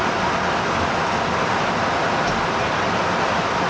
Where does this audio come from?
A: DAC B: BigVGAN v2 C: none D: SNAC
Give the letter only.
C